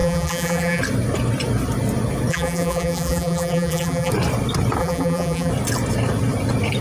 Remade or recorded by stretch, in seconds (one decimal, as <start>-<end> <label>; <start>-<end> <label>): 0.0-0.8 remade; 0.8-2.3 recorded; 2.3-4.1 remade; 4.1-4.8 recorded; 4.8-5.5 remade; 5.5-6.8 recorded